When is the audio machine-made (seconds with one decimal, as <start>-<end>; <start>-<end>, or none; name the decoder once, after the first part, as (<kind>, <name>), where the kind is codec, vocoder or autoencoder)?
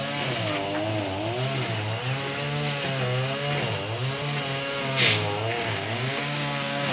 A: 5.5-6.9 (codec, DAC)